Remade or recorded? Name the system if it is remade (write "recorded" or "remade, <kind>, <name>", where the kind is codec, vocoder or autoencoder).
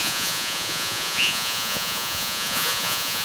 remade, vocoder, Vocos